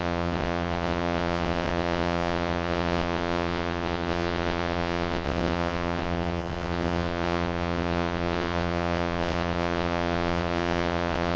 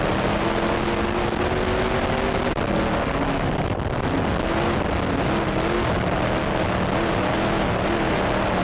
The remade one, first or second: first